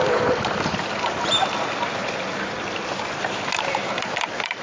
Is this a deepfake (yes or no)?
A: no